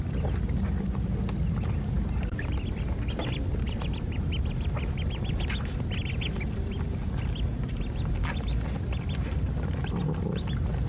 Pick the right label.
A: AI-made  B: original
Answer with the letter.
B